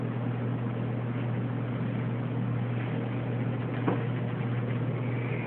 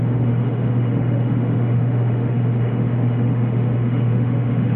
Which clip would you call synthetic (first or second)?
second